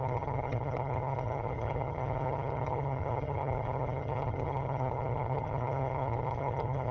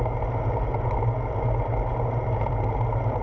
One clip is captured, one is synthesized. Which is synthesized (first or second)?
first